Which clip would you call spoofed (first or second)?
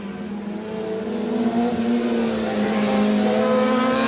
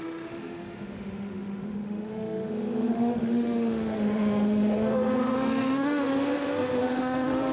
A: second